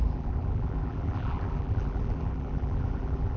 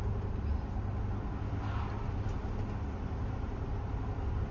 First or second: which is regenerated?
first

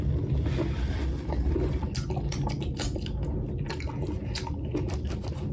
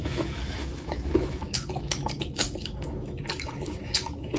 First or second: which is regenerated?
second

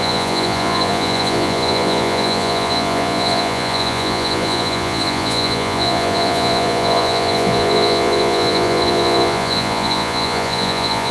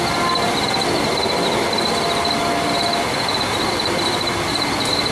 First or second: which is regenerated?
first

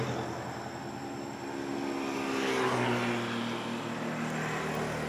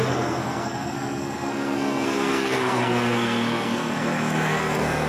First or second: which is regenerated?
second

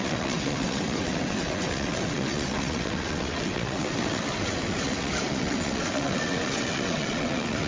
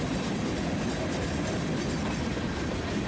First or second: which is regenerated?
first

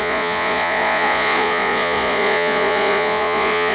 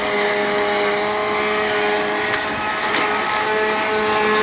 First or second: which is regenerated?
first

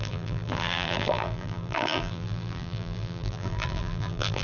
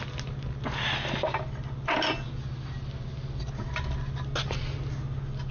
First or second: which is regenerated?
first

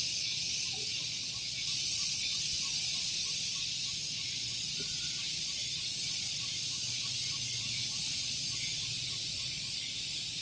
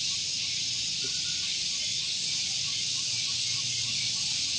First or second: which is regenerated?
first